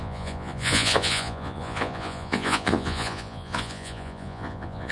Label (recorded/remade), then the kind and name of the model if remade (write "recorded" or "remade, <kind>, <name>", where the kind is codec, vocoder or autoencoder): remade, vocoder, Vocos